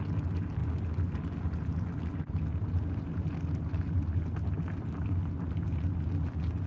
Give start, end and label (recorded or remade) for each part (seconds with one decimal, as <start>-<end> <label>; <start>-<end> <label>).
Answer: 0.0-6.7 recorded

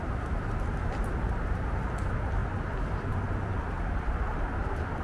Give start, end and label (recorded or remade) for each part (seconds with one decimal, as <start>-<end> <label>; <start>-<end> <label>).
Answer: 0.0-5.0 recorded

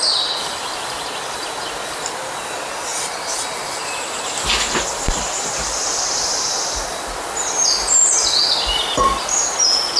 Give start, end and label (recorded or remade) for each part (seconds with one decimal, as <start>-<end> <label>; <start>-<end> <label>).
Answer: 0.0-10.0 recorded

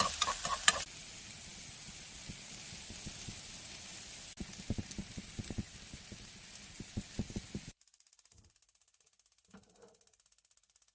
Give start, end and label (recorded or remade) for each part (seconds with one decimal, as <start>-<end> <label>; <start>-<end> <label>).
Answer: 0.0-10.9 recorded

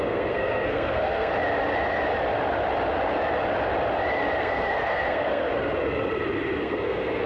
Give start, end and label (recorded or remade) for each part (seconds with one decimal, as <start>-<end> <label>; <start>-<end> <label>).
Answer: 0.0-1.3 remade; 1.3-4.4 recorded; 4.4-5.5 remade; 5.5-6.6 recorded; 6.6-7.3 remade

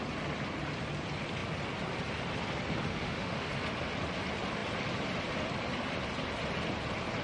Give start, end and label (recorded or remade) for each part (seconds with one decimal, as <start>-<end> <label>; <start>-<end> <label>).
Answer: 0.0-2.9 recorded; 2.9-3.5 remade; 3.5-7.2 recorded

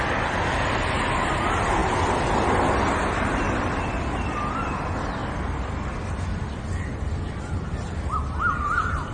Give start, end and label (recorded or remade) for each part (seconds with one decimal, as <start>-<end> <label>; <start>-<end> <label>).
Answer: 0.0-5.2 recorded; 5.2-7.4 remade; 7.4-9.1 recorded

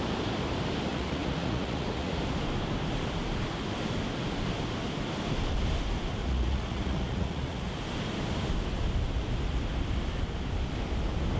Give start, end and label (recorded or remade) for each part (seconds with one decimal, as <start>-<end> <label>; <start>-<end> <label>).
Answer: 0.0-0.9 recorded; 0.9-2.2 remade; 2.2-6.2 recorded; 6.2-7.7 remade; 7.7-11.4 recorded